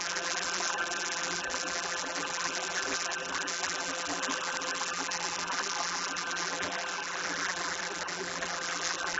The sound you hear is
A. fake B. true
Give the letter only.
A